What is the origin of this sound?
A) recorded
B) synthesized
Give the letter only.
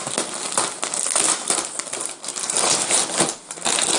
A